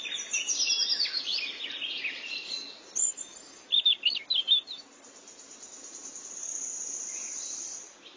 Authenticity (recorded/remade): recorded